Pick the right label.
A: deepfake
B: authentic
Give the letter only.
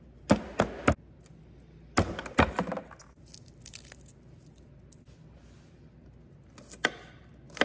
B